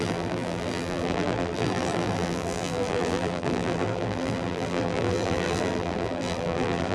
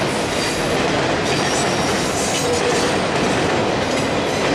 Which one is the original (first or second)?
second